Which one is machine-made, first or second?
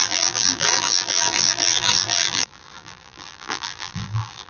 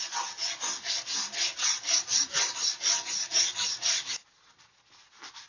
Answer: first